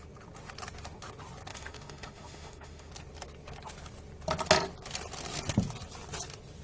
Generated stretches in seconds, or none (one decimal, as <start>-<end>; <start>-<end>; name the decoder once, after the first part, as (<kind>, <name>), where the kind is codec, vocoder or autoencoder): 1.5-2.9 (autoencoder, DAC-VAE)